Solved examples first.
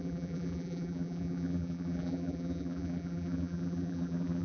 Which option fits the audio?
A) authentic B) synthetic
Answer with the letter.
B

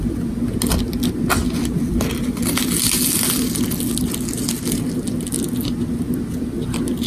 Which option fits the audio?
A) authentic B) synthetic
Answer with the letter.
A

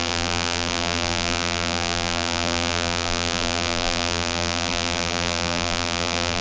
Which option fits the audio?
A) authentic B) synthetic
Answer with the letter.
B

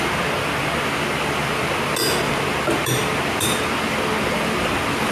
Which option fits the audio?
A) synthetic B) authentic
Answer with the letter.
B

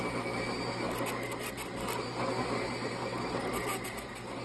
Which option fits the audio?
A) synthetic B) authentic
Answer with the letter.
B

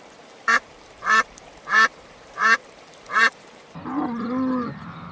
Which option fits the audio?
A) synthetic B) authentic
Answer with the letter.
A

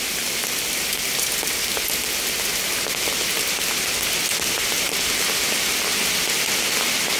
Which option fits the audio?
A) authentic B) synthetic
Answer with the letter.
A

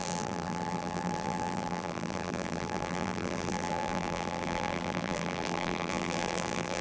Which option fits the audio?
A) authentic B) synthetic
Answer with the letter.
B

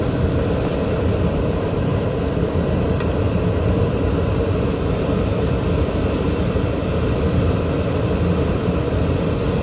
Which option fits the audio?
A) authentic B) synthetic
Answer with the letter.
B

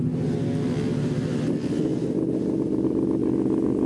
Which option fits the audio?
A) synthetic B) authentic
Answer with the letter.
B